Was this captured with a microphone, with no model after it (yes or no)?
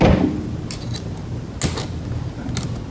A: yes